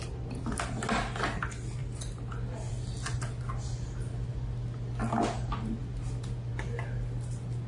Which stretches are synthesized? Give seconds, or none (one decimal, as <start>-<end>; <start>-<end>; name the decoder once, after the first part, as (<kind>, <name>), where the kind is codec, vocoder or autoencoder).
none